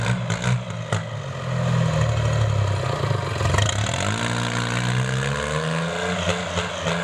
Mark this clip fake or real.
real